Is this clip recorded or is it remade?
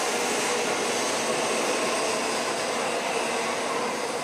recorded